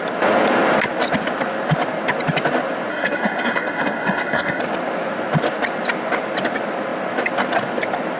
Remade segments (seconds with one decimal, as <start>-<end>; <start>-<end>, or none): 2.9-4.6